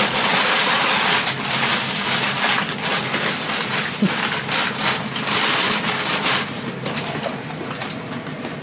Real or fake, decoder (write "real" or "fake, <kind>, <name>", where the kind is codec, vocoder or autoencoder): real